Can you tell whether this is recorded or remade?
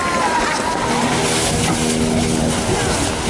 recorded